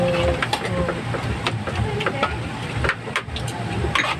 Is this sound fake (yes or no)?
no